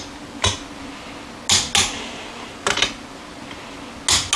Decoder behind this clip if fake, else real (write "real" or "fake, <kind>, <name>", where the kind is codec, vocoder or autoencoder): real